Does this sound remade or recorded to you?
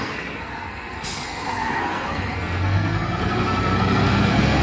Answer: remade